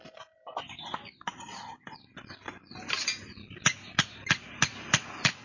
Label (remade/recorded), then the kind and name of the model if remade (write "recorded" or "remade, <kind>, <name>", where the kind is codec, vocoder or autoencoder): recorded